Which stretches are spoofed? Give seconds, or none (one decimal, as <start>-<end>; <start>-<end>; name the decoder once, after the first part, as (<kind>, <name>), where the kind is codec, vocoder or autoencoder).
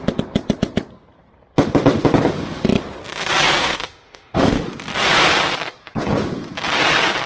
3.6-4.7 (autoencoder, DAC-VAE)